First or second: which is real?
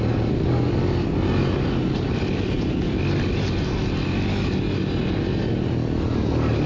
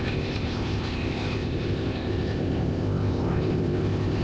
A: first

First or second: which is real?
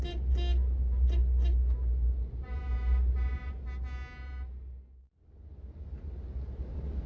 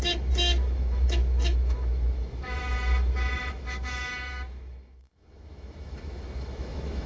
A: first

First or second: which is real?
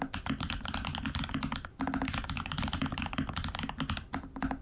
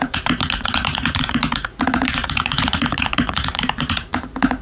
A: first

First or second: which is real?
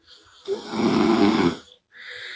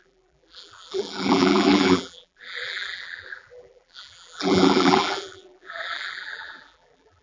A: first